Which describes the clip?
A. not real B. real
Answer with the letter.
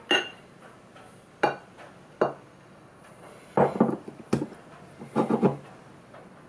B